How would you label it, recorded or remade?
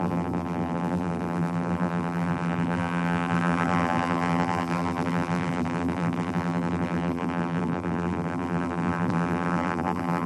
remade